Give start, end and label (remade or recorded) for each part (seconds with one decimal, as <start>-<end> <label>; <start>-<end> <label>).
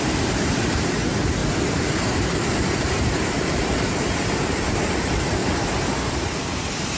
0.0-1.4 remade; 1.4-2.8 recorded; 2.8-5.4 remade; 5.4-6.1 recorded; 6.1-7.0 remade